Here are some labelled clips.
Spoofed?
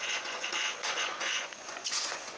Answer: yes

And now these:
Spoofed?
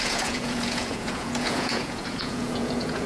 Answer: yes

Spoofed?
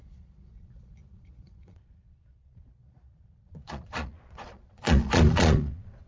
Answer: yes